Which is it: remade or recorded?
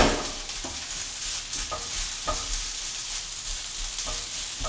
recorded